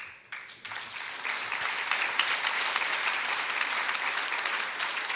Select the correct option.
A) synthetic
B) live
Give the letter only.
B